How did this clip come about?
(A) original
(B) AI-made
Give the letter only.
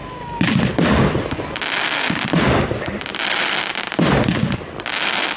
A